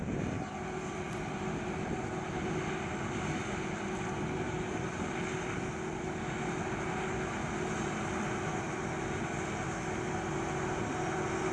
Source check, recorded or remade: recorded